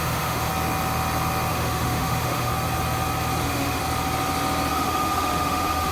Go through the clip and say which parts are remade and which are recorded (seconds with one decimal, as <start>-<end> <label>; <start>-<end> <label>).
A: 0.0-0.5 remade; 0.5-1.5 recorded; 1.5-2.5 remade; 2.5-3.4 recorded; 3.4-3.8 remade; 3.8-4.7 recorded; 4.7-5.9 remade